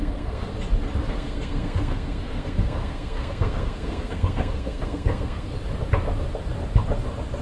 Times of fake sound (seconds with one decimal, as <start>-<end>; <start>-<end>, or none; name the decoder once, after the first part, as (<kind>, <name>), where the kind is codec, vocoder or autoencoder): 0.0-0.5 (codec, SNAC); 1.1-5.5